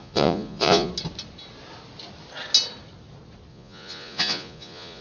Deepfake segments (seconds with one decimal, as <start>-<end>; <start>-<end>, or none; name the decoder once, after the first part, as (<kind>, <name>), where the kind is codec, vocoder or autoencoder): 0.0-0.9 (vocoder, Vocos); 3.5-5.0